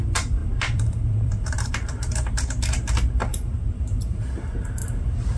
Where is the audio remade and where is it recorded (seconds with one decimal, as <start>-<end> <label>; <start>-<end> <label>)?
0.0-0.4 recorded; 0.4-1.7 remade; 1.7-3.3 recorded; 3.3-4.3 remade; 4.3-4.8 recorded; 4.8-5.4 remade